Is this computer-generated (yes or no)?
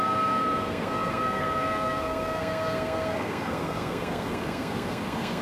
yes